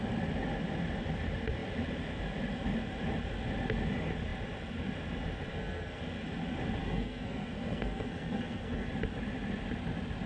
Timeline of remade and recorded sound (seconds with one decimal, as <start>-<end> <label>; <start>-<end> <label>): 0.0-5.5 recorded; 5.5-6.0 remade; 6.0-6.8 recorded; 6.8-8.9 remade; 8.9-10.3 recorded